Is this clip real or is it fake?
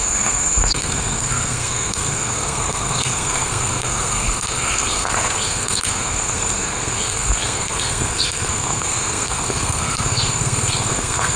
fake